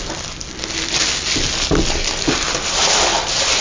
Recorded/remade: recorded